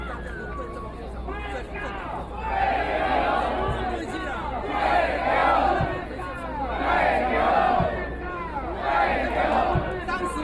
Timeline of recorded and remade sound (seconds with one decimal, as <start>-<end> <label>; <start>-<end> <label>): 0.0-10.4 recorded